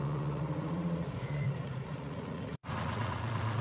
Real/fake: fake